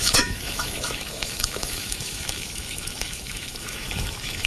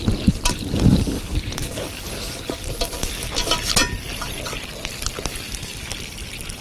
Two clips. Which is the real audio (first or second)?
second